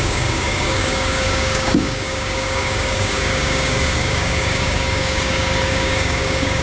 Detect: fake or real fake